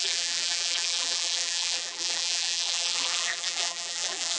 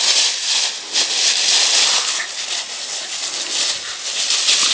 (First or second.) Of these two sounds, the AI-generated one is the first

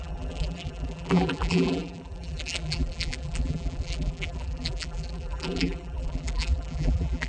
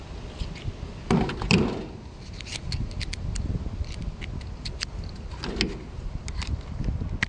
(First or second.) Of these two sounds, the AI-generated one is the first